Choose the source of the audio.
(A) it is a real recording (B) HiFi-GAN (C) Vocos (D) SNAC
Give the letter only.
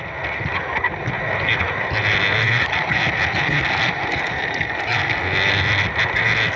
A